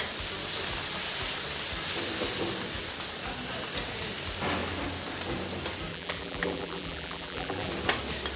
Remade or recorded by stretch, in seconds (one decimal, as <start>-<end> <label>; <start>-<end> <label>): 0.0-5.9 recorded; 5.9-7.7 remade; 7.7-8.4 recorded